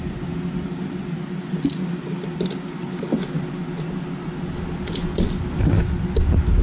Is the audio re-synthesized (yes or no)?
no